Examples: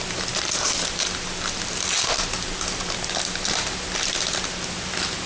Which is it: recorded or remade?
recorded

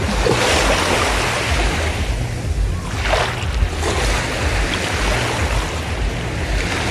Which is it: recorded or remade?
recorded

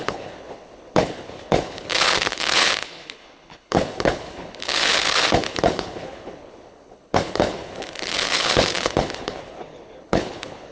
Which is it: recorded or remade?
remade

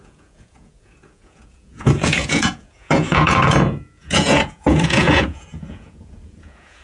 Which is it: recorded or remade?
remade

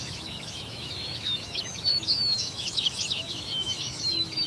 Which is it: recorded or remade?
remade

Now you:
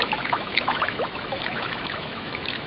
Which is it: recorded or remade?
remade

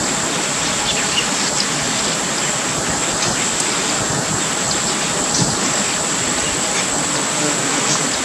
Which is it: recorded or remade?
recorded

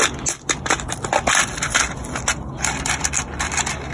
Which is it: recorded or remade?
recorded